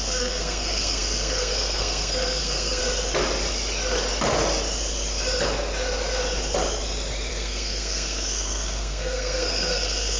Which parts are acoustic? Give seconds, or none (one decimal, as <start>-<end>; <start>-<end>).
2.8-7.3